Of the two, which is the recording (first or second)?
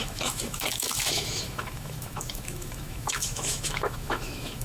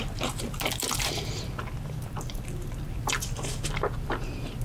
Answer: second